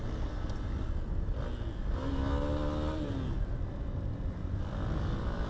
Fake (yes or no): no